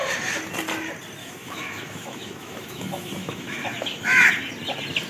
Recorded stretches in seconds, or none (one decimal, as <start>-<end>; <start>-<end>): 0.0-1.2; 4.3-5.1